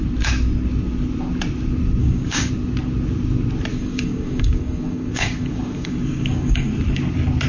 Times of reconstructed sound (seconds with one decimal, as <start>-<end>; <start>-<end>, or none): 2.0-2.5; 3.7-6.7